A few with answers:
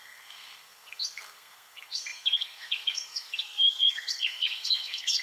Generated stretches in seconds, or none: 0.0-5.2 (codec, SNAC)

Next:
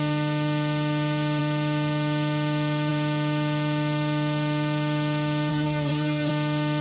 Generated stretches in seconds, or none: 5.5-6.3 (codec, SNAC)

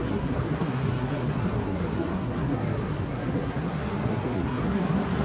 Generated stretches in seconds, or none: 0.0-5.2 (codec, SNAC)

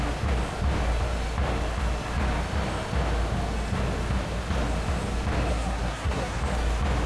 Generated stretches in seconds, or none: 5.5-6.4 (codec, SNAC)